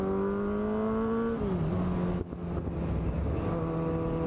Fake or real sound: real